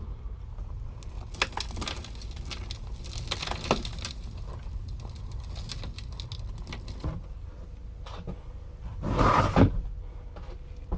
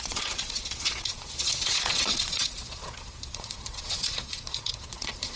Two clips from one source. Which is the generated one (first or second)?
second